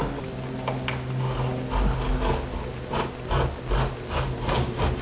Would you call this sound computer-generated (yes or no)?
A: no